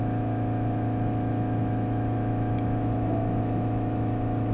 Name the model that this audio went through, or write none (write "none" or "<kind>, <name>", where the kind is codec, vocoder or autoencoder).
autoencoder, DAC-VAE